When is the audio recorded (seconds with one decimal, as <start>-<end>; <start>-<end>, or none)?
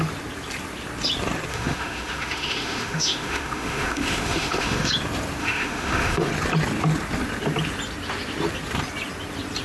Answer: 0.0-1.5; 4.9-5.4; 6.3-9.6